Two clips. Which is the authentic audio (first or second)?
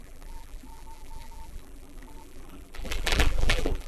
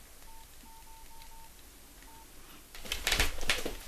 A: second